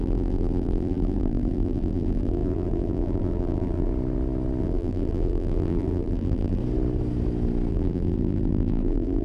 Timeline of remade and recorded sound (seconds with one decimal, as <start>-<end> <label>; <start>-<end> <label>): 0.0-3.9 remade; 3.9-4.6 recorded; 4.6-6.6 remade; 6.6-7.7 recorded; 7.7-9.2 remade